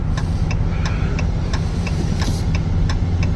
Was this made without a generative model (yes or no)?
yes